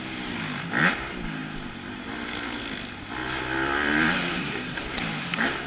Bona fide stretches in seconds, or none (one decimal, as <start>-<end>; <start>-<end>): 0.0-4.3; 4.8-5.7